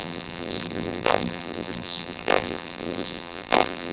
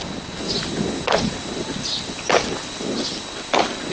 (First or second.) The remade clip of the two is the first